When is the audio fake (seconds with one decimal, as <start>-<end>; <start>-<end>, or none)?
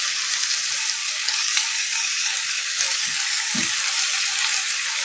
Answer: 1.0-3.7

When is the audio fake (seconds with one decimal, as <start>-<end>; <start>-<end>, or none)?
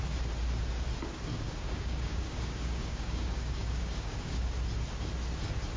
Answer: 1.3-4.5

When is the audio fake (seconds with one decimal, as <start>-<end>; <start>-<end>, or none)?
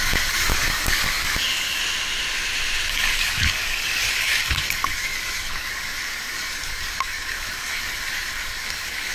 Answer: 0.0-1.8; 2.9-9.1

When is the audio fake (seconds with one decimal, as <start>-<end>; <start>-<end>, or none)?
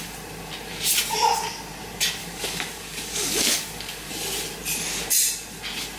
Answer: 2.2-4.1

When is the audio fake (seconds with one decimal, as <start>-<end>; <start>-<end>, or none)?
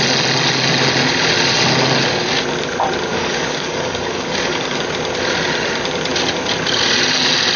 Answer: 3.1-4.8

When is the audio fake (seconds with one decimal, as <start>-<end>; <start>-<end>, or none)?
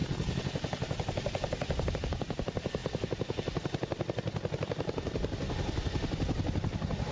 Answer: none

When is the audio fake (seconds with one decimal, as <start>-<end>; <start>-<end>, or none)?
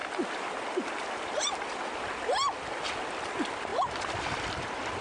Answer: none